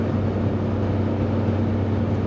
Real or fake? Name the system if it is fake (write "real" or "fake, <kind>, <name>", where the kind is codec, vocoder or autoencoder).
real